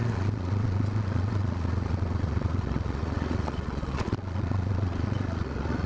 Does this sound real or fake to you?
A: fake